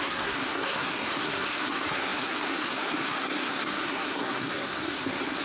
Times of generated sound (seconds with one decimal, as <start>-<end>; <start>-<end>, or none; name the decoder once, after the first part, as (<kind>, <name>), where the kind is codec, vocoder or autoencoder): 0.0-5.4 (codec, SNAC)